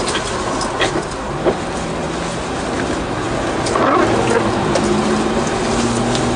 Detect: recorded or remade recorded